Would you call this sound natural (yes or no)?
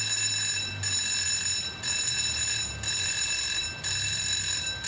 yes